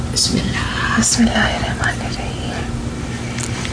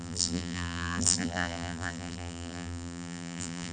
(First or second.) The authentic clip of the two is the first